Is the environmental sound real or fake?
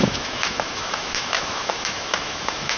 fake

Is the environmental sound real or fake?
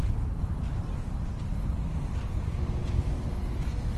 real